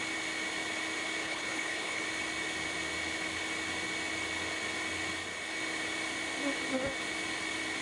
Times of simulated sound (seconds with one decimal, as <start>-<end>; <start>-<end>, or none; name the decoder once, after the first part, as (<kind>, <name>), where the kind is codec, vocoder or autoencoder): 1.2-2.0 (codec, HILCodec)